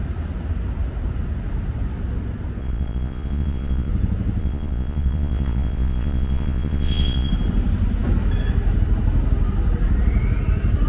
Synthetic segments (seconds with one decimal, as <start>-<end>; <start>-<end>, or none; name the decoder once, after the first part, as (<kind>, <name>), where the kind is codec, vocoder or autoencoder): 2.6-3.9 (vocoder, Vocos); 4.4-7.3